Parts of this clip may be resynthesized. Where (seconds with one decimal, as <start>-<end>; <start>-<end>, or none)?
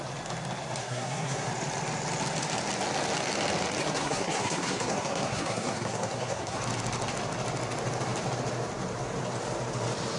0.8-1.5; 3.8-6.6